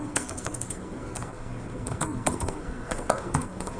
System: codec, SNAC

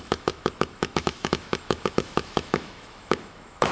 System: autoencoder, DAC-VAE